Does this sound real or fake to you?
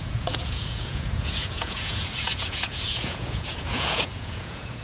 fake